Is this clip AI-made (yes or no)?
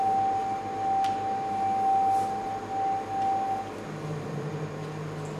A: no